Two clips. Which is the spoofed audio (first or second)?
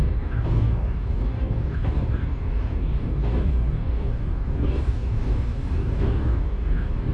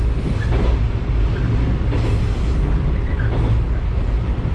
first